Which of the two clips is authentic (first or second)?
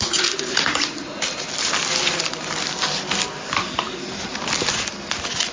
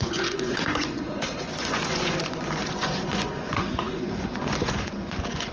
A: first